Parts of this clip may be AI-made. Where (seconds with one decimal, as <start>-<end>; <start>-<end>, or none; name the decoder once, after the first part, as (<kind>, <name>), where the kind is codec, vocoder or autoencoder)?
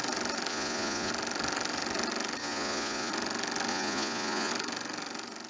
0.5-1.1 (vocoder, Vocos); 2.4-3.1; 3.7-4.5